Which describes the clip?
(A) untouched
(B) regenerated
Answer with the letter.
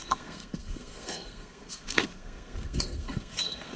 B